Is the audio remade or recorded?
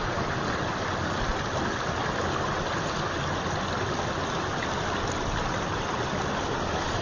recorded